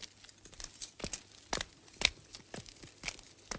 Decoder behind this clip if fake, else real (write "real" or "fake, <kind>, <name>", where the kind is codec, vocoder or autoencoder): real